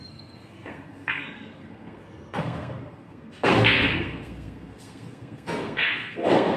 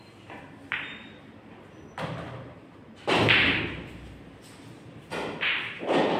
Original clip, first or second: second